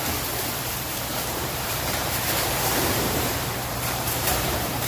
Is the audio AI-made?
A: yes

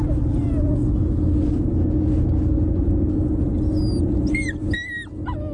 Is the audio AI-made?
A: no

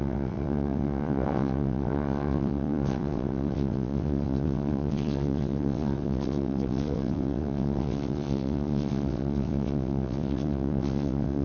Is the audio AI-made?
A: yes